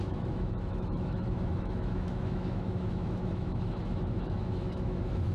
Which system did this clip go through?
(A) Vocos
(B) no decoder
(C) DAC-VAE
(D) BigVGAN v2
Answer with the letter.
C